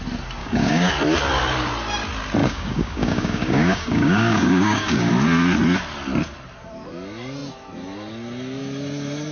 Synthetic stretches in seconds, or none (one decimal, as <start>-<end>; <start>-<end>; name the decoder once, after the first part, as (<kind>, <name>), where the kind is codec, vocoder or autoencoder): 0.4-0.9 (codec, DAC); 2.4-5.1